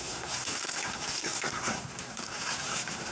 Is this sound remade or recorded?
remade